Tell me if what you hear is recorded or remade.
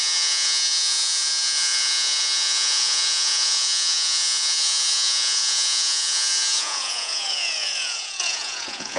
remade